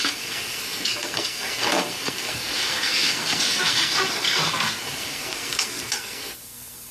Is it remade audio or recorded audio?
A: remade